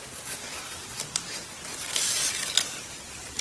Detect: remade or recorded recorded